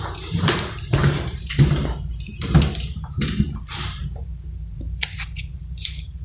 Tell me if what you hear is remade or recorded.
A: remade